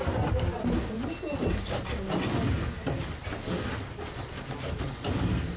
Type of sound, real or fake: real